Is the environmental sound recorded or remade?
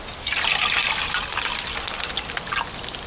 recorded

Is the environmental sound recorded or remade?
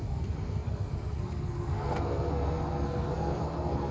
remade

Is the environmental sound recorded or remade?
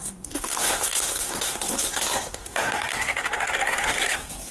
remade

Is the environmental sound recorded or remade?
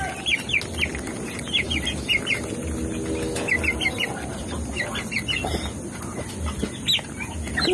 recorded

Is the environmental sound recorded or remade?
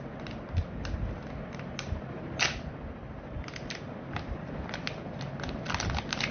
recorded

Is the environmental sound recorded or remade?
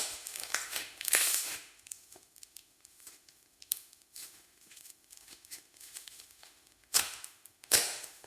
remade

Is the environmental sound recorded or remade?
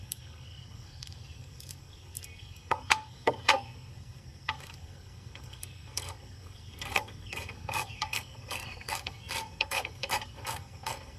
remade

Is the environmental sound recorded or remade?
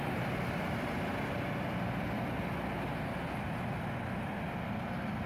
recorded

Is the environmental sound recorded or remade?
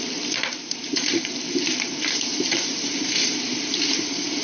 remade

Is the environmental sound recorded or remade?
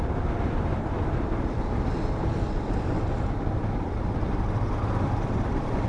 recorded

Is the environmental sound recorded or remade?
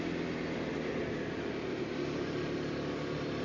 recorded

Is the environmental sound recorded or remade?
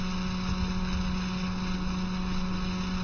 recorded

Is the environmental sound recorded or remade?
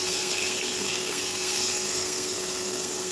remade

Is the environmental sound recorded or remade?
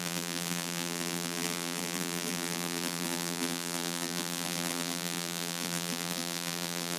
remade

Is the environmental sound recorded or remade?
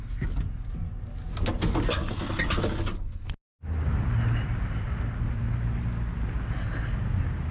recorded